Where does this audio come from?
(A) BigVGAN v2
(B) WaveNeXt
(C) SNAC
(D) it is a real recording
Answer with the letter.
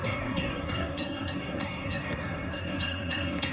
C